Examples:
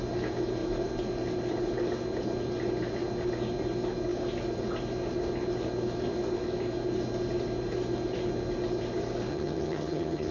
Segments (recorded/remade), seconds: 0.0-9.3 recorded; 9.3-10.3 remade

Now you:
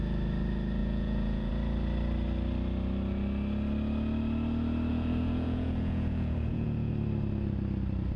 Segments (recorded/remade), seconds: 0.0-0.8 recorded; 0.8-1.5 remade; 1.5-4.9 recorded; 4.9-6.9 remade; 6.9-8.2 recorded

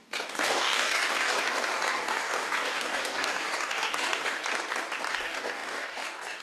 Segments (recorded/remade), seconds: 0.0-4.4 remade; 4.4-5.1 recorded; 5.1-6.4 remade

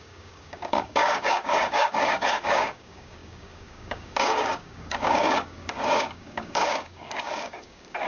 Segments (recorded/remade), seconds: 0.0-8.1 remade